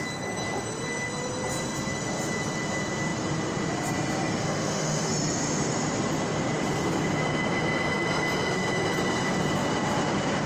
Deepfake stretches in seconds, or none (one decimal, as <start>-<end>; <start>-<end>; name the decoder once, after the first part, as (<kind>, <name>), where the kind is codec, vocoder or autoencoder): 4.4-5.1 (autoencoder, DAC-VAE)